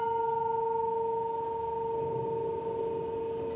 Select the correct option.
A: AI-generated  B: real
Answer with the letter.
B